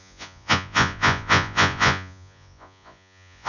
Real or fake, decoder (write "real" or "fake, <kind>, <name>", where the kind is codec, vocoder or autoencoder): fake, vocoder, Vocos